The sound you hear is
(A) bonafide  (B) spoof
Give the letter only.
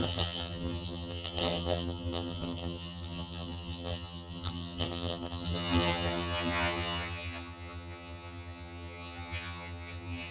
B